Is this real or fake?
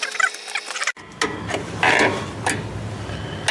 real